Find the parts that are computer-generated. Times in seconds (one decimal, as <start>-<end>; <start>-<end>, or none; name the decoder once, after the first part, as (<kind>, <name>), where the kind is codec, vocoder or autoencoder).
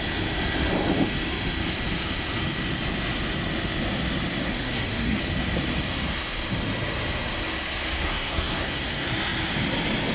4.5-5.2 (codec, SNAC); 8.0-9.1